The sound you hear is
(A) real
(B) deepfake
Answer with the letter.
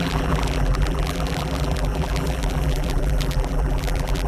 B